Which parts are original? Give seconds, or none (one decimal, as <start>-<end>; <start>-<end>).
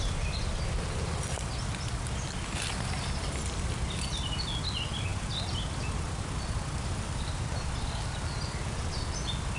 0.0-9.6